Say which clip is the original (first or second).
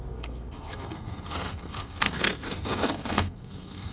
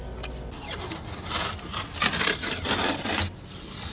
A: second